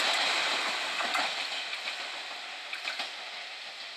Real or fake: real